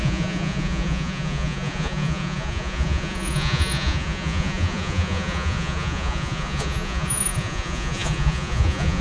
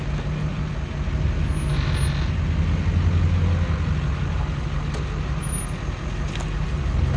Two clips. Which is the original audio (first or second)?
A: second